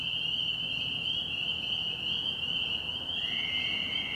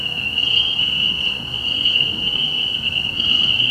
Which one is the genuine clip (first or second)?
first